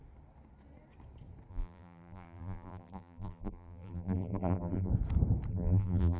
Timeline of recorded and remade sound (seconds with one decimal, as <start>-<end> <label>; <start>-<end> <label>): 0.0-1.5 recorded; 1.5-4.9 remade; 4.9-5.5 recorded; 5.5-6.2 remade